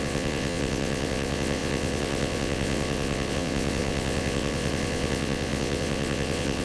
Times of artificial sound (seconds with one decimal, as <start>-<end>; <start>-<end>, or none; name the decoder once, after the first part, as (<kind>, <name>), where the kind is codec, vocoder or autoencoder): 0.0-6.6 (vocoder, WaveNeXt)